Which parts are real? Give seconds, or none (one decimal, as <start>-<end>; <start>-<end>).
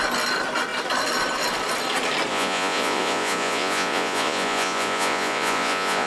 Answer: 0.0-2.3